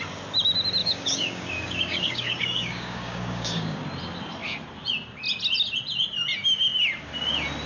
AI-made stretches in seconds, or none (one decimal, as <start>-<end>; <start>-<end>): 0.8-3.8